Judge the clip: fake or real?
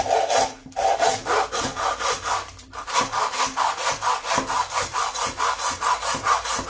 real